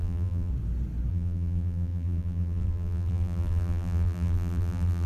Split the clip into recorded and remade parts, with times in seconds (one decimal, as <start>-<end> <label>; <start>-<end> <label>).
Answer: 0.0-0.5 remade; 0.5-1.1 recorded; 1.1-5.1 remade